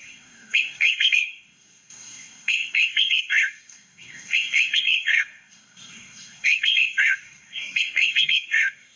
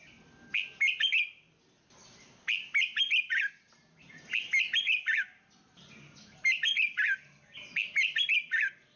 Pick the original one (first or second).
second